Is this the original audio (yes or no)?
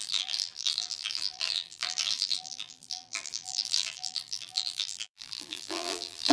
no